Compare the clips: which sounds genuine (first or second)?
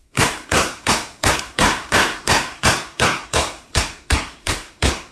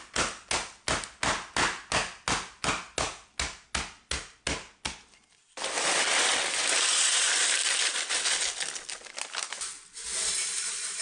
second